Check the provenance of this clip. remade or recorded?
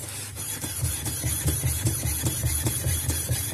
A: remade